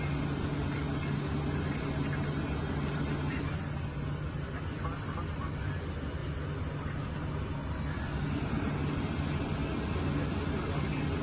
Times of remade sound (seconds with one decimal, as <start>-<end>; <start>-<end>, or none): none